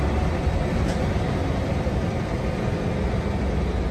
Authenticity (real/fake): real